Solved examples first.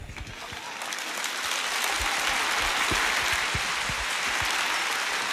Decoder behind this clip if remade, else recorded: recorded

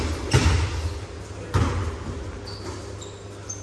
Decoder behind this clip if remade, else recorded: recorded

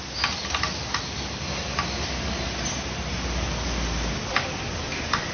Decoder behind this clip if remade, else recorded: recorded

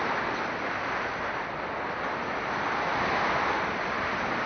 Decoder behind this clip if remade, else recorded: recorded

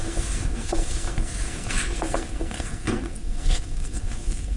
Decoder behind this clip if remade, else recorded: remade, codec, SNAC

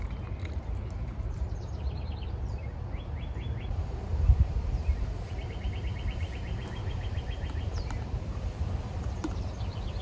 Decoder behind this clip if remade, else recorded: remade, vocoder, BigVGAN v2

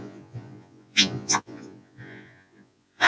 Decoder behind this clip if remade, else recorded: remade, vocoder, Vocos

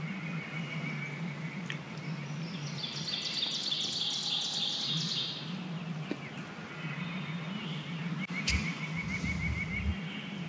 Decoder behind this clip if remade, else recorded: recorded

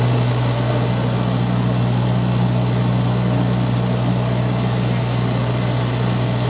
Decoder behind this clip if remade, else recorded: recorded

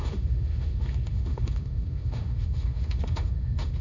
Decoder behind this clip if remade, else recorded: remade, autoencoder, DAC-VAE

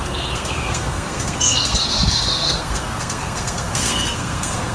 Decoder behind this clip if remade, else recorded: remade, codec, SNAC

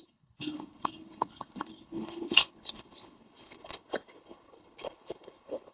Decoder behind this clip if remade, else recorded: remade, codec, HILCodec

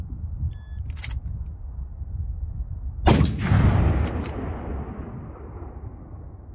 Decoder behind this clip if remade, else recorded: recorded